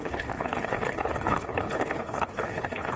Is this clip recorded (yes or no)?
no